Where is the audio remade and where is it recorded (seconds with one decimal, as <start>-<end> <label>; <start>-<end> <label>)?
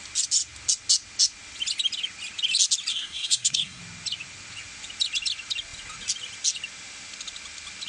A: 0.0-2.9 recorded; 2.9-3.8 remade; 3.8-7.9 recorded